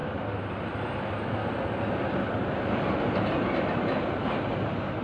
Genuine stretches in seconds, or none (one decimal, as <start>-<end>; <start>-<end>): 0.0-5.0